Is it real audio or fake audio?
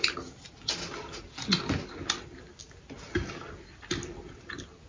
real